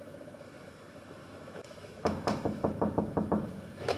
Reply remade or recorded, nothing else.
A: remade